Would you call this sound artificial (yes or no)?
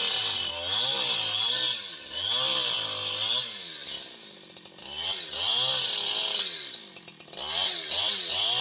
no